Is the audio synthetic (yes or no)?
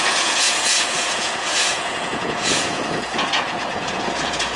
yes